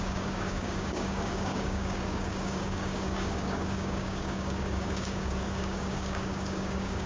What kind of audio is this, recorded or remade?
remade